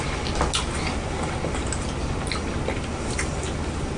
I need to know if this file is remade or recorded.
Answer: recorded